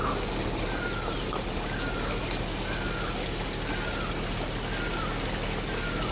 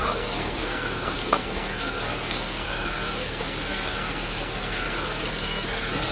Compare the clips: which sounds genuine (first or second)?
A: first